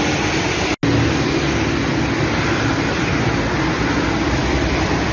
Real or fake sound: real